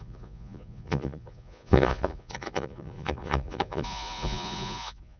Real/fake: fake